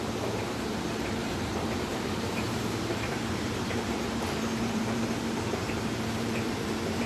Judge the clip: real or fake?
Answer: fake